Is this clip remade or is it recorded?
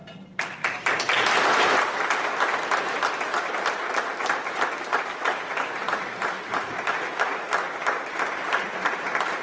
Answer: recorded